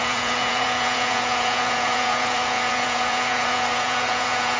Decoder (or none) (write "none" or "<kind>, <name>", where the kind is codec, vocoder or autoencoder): vocoder, Vocos